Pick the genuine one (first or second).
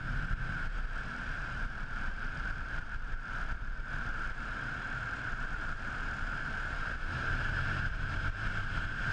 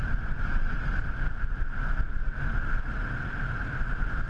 second